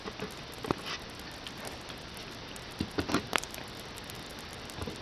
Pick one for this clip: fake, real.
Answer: real